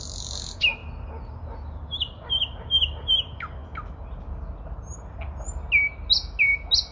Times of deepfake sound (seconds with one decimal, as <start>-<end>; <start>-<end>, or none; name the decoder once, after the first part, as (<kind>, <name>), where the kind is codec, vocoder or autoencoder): none

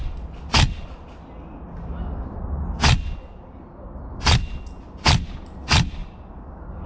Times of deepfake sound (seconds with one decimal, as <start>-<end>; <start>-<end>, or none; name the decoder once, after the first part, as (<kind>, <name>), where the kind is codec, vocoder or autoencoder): 6.0-6.9 (vocoder, BigVGAN v2)